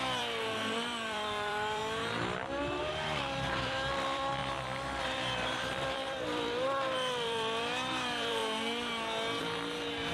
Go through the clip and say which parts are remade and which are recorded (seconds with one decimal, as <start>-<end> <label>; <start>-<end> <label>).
0.0-1.8 remade; 1.8-2.8 recorded; 2.8-4.4 remade; 4.4-5.0 recorded; 5.0-8.4 remade; 8.4-9.4 recorded; 9.4-10.1 remade